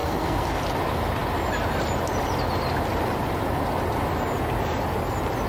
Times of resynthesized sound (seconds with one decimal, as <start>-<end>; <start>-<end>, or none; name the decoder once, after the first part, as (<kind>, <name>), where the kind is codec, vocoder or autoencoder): 0.0-0.6 (codec, SNAC)